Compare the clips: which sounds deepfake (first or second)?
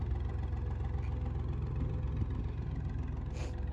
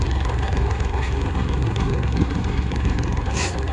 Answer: second